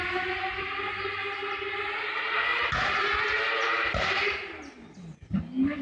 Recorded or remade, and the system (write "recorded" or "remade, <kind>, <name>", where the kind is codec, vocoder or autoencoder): recorded